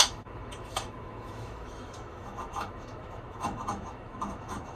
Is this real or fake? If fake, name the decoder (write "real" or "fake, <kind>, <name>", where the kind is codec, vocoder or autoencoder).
fake, autoencoder, DAC-VAE